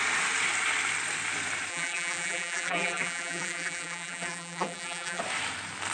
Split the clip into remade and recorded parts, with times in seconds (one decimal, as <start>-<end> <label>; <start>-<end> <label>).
0.0-1.7 recorded; 1.7-5.2 remade; 5.2-5.9 recorded

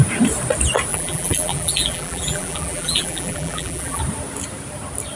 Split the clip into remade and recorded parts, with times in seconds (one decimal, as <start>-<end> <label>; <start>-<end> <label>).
0.0-0.9 recorded; 0.9-4.0 remade; 4.0-5.2 recorded

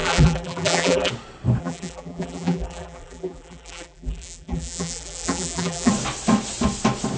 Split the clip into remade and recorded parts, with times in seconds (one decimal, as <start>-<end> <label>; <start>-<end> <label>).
0.0-1.1 remade; 1.1-1.6 recorded; 1.6-5.9 remade; 5.9-7.2 recorded

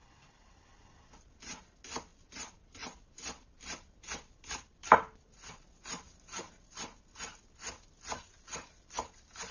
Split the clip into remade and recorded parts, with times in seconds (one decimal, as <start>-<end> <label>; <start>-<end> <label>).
0.0-0.7 recorded; 0.7-1.5 remade; 1.5-2.1 recorded; 2.1-7.0 remade; 7.0-9.5 recorded

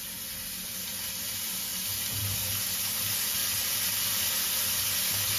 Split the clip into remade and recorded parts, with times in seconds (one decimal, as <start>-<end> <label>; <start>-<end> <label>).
0.0-5.4 recorded

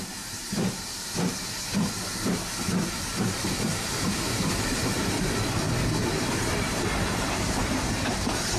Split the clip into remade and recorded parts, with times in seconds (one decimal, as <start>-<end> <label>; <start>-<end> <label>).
0.0-1.3 remade; 1.3-3.3 recorded; 3.3-4.8 remade; 4.8-7.2 recorded; 7.2-8.6 remade

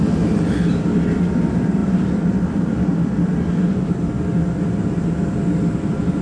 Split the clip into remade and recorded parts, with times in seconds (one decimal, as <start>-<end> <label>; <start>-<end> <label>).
0.0-1.8 recorded; 1.8-5.5 remade; 5.5-6.2 recorded